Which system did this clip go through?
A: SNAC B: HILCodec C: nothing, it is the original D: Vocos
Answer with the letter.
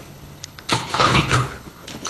B